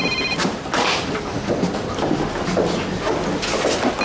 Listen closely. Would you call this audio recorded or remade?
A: recorded